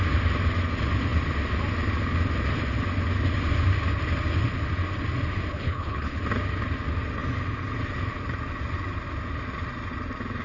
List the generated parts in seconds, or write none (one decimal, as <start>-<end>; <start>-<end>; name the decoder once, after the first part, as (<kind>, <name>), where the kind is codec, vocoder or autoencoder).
5.5-6.2 (codec, HILCodec)

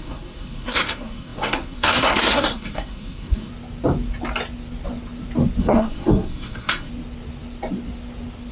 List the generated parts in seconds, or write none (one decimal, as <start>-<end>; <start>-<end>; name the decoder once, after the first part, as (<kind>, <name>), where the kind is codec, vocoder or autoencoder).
0.0-3.5 (codec, SNAC); 5.6-6.9

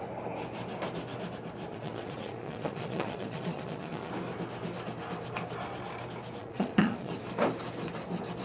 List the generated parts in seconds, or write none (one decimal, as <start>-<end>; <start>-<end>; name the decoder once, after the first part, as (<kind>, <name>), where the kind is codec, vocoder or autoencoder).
1.7-4.1 (vocoder, Vocos); 6.4-7.1